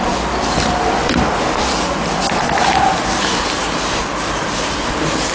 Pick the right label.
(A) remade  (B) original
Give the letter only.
B